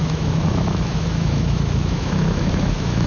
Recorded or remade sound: remade